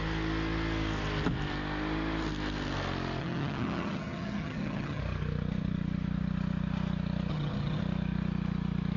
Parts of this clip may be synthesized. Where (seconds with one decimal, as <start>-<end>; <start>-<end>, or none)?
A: 3.2-5.0; 7.3-7.8